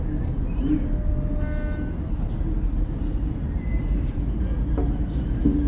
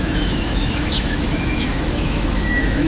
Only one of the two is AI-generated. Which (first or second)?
second